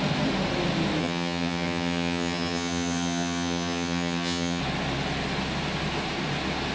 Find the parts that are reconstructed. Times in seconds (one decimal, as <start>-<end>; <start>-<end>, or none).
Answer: 1.0-4.6